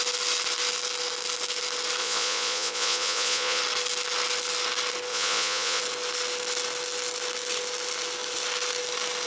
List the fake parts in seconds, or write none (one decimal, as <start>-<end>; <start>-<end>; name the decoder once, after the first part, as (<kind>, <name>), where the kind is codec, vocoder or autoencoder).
2.0-3.6 (vocoder, Vocos); 5.1-5.8